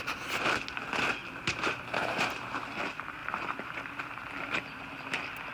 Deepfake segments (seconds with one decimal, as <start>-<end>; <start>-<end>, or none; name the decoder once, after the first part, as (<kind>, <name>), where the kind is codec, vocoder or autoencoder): 1.2-2.6 (vocoder, BigVGAN v2); 3.2-4.0